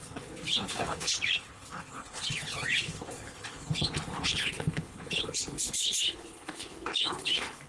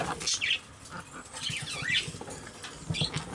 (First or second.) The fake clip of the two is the first